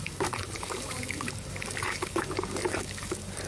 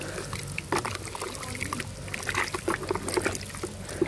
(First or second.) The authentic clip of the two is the second